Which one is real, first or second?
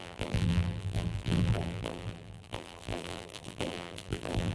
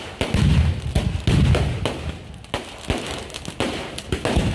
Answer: second